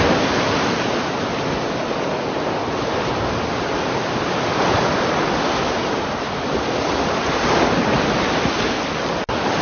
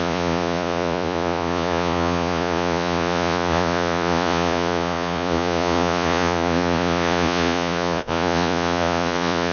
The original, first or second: first